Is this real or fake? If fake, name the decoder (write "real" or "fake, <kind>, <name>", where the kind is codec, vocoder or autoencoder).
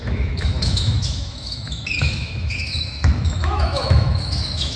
fake, autoencoder, DAC-VAE